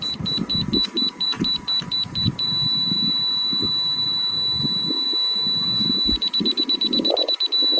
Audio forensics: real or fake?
fake